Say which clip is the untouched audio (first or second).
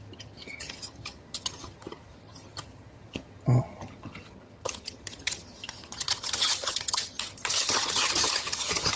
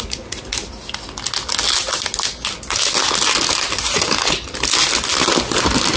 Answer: second